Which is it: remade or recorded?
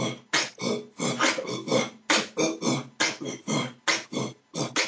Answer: recorded